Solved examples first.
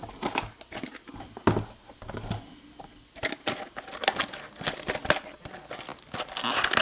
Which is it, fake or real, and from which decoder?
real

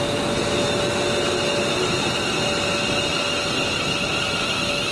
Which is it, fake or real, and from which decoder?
real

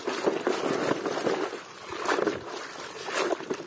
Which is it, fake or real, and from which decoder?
real